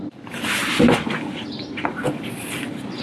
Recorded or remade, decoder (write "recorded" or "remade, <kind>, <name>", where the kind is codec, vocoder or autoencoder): recorded